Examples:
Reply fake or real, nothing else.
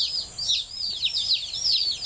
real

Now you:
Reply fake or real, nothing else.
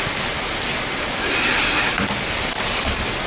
real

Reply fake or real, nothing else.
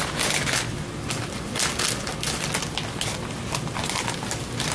real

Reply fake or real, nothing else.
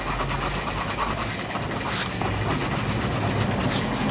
real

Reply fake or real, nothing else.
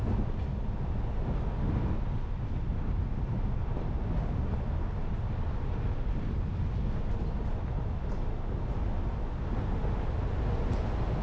real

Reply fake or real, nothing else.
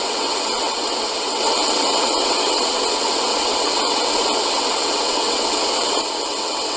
fake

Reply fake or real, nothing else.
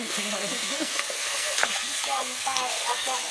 fake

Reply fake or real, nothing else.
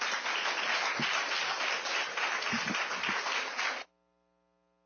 real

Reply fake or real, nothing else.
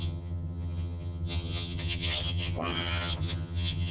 fake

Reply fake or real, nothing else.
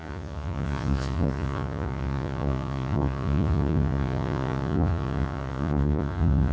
fake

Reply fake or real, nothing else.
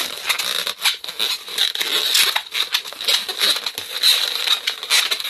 real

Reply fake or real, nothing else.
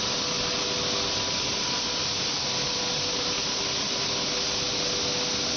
real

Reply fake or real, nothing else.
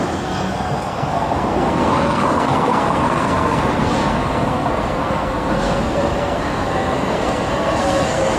fake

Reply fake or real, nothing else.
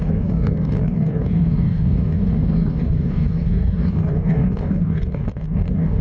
fake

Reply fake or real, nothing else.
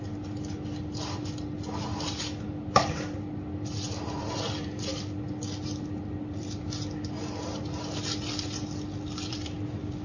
fake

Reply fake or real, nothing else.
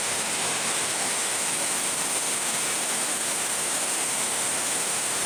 fake